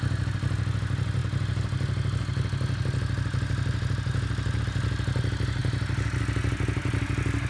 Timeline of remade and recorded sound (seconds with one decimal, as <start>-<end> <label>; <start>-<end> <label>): 0.0-7.5 recorded

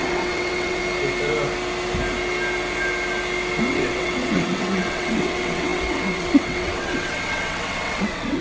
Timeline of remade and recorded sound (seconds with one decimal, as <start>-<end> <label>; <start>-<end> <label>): 0.0-0.8 remade; 0.8-3.6 recorded; 3.6-8.4 remade

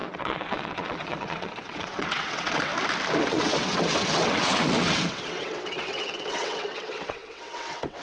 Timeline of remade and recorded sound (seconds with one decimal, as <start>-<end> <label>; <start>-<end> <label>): 0.0-2.7 remade; 2.7-3.2 recorded; 3.2-8.0 remade

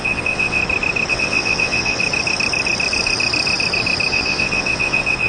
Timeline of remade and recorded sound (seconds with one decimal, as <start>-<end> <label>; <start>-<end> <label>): 0.0-0.6 remade; 0.6-1.1 recorded; 1.1-2.0 remade; 2.0-4.1 recorded; 4.1-5.3 remade

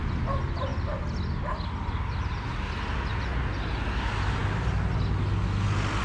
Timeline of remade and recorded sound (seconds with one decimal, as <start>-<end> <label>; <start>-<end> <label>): 0.0-6.0 recorded

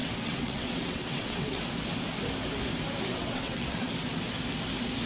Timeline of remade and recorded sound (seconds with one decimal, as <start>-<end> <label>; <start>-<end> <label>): 0.0-1.6 remade; 1.6-3.1 recorded; 3.1-3.9 remade; 3.9-5.1 recorded